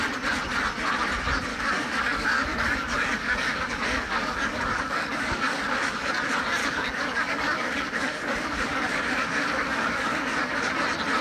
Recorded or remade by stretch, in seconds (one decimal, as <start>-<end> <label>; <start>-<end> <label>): 0.0-1.5 recorded; 1.5-6.1 remade; 6.1-6.6 recorded; 6.6-10.7 remade; 10.7-11.2 recorded